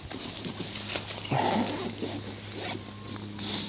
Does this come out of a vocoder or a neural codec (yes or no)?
no